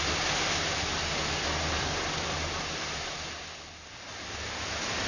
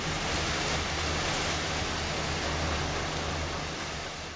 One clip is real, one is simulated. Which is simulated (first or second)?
first